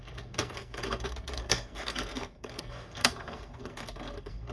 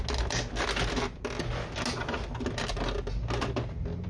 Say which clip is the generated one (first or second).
first